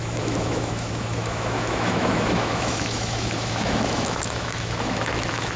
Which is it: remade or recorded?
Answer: remade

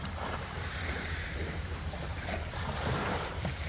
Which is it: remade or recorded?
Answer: remade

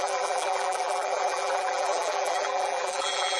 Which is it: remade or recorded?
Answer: remade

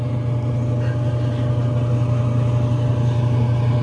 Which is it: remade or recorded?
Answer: recorded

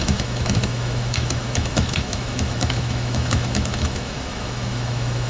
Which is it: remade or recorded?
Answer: remade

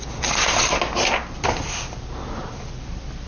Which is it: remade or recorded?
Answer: recorded